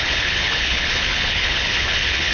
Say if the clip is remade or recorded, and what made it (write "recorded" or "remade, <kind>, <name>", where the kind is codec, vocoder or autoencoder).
remade, codec, HILCodec